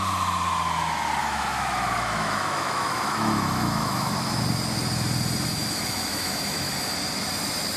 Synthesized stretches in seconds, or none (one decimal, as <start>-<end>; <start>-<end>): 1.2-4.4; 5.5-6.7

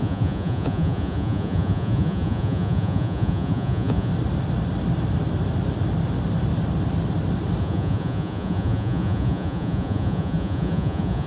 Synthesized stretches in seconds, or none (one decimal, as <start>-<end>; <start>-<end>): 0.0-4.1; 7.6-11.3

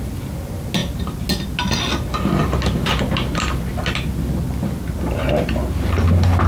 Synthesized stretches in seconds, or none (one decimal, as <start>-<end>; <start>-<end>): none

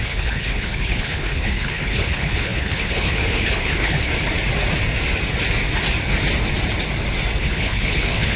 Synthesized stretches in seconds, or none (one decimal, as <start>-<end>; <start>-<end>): 0.0-4.1; 7.4-8.4

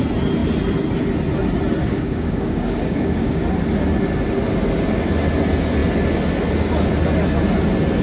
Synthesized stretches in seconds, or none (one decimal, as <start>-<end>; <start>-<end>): 1.8-3.4

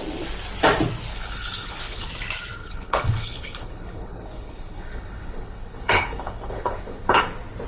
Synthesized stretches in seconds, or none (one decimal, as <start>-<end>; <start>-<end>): 1.1-2.1; 2.6-7.2

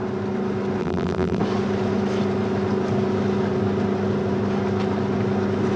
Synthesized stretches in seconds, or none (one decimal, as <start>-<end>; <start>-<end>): 0.8-1.4